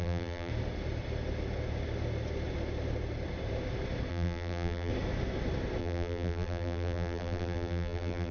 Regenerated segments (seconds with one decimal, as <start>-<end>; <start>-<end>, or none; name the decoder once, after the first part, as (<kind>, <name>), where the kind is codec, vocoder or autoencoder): 0.0-0.5 (vocoder, BigVGAN v2); 4.1-4.9; 5.8-8.3